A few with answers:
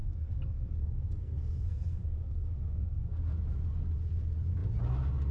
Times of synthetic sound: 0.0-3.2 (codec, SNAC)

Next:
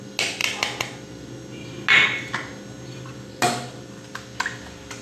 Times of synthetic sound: none